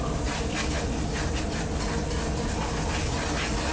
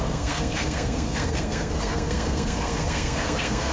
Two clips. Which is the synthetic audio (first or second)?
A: second